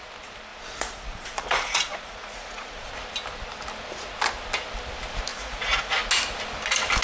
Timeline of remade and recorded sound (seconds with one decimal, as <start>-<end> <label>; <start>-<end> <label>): 0.0-0.5 recorded; 0.5-2.9 remade; 2.9-5.3 recorded; 5.3-5.9 remade; 5.9-7.0 recorded